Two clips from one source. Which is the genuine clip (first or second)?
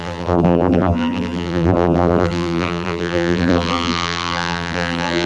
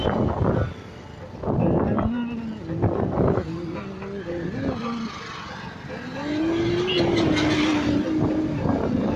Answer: second